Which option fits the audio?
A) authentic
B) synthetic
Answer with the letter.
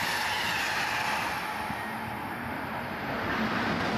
A